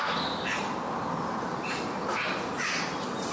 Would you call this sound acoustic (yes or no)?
yes